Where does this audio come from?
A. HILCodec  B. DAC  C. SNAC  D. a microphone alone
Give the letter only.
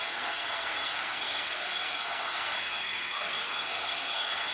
C